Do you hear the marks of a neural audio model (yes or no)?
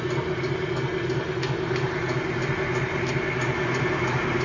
no